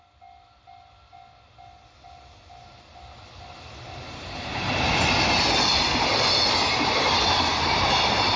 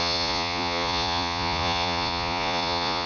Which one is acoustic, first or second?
first